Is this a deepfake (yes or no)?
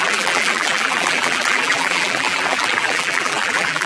yes